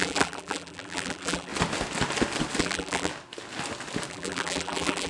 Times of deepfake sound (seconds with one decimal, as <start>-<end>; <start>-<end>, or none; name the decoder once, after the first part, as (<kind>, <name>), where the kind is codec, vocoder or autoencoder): 0.0-1.5 (vocoder, BigVGAN v2); 2.6-3.1; 4.1-5.1